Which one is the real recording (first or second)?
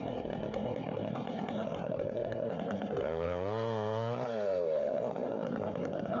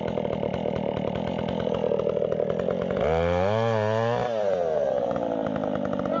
second